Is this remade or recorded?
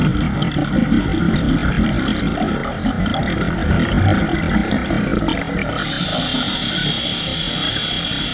recorded